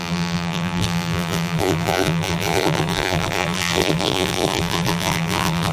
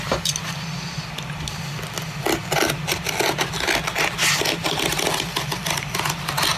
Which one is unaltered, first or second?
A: second